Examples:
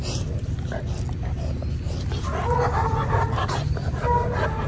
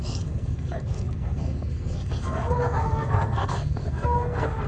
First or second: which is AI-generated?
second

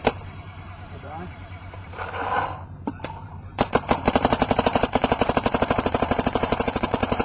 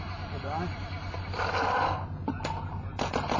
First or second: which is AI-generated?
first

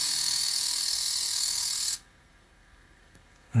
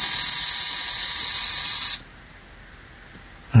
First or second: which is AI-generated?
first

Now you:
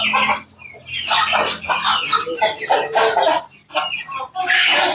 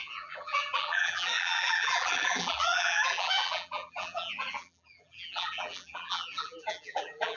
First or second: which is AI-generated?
second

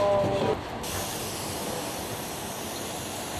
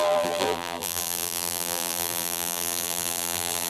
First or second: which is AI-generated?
second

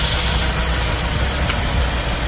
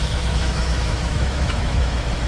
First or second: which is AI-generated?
second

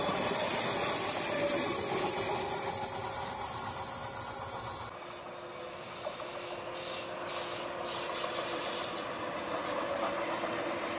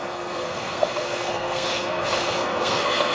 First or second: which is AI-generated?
second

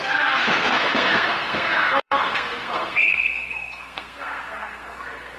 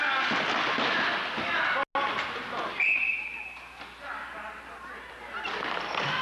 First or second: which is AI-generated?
first